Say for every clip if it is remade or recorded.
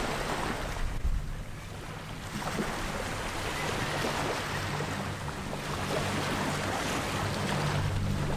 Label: recorded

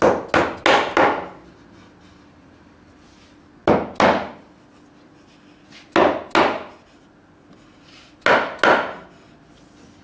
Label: recorded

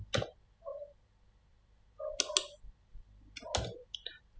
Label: recorded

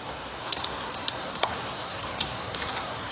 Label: remade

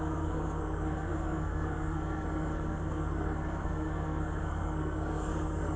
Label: remade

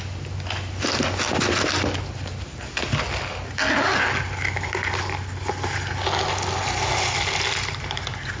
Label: recorded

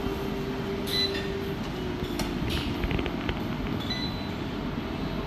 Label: recorded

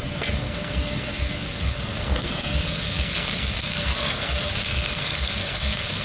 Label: remade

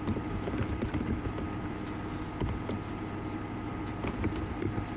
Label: recorded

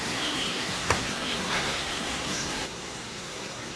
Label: remade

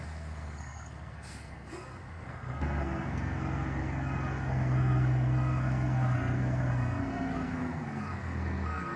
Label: remade